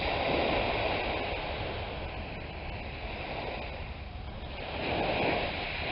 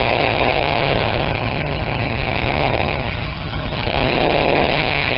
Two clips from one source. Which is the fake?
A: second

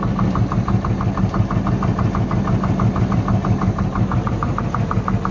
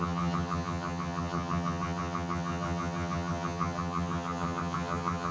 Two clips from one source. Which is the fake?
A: second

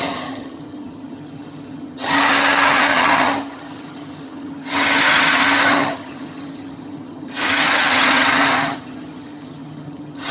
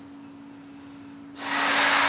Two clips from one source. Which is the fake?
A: first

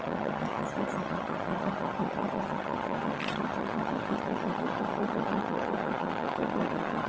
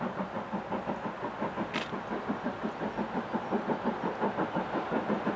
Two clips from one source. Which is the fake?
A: first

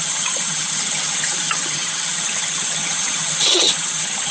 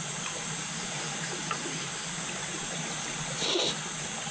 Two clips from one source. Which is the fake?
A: first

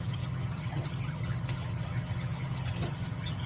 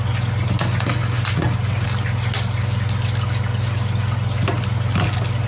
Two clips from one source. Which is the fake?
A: first